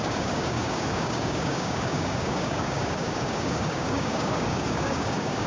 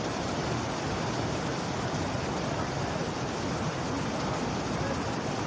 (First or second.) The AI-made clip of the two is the first